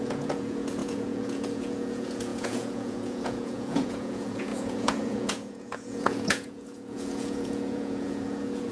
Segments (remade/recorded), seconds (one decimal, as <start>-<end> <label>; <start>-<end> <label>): 0.0-8.7 remade